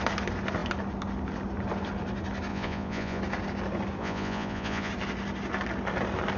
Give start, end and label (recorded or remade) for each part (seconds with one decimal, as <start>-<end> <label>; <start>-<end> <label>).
0.0-2.5 recorded; 2.5-3.2 remade; 3.2-4.0 recorded; 4.0-4.9 remade; 4.9-6.4 recorded